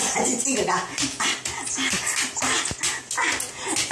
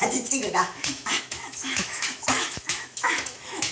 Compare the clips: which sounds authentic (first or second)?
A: first